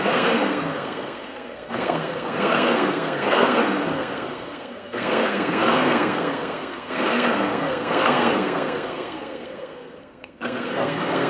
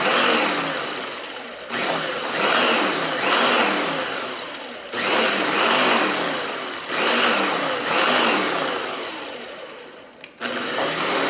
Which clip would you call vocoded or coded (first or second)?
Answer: first